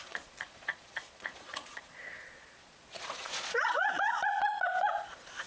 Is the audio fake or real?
fake